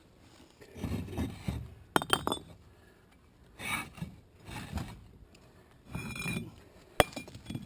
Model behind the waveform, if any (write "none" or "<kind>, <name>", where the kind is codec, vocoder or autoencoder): none